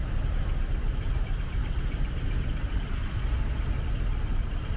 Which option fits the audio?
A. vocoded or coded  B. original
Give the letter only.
B